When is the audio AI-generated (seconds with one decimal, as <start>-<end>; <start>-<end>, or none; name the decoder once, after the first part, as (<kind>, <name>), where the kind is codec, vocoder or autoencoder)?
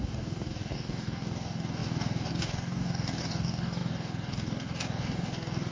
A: 0.0-5.7 (codec, DAC)